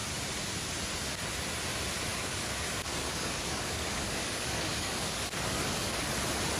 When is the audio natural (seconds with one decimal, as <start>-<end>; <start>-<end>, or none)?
0.0-2.1; 6.1-6.6